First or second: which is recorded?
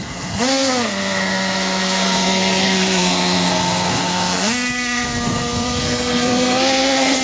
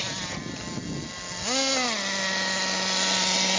second